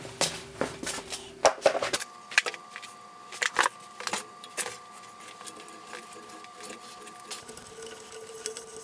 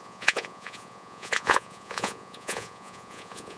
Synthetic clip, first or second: second